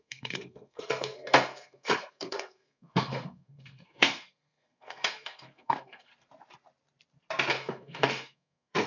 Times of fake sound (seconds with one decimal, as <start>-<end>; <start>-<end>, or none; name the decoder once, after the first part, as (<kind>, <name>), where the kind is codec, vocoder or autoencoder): 0.0-6.1 (codec, SNAC); 7.5-8.9